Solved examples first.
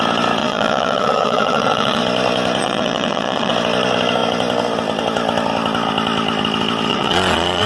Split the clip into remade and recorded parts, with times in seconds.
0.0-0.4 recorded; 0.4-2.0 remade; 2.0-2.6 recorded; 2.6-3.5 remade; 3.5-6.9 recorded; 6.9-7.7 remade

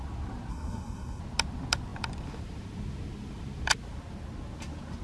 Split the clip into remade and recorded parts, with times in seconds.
0.0-0.5 recorded; 0.5-1.2 remade; 1.2-5.0 recorded